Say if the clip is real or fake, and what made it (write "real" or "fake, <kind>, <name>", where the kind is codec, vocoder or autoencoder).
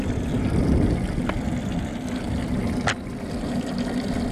real